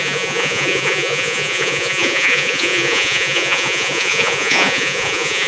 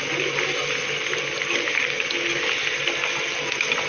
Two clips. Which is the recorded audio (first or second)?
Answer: second